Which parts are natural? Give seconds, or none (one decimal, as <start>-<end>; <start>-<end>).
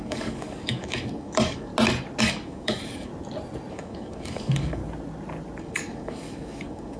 1.7-2.2; 3.1-3.7; 4.8-5.6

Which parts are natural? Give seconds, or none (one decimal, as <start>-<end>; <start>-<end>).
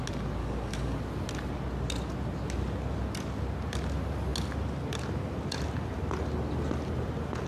0.0-0.4; 1.0-7.5